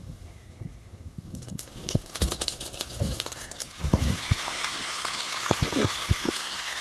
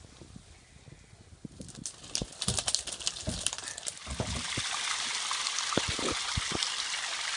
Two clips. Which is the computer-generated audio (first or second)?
first